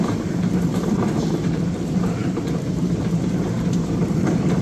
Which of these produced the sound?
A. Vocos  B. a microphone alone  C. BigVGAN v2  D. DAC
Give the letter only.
C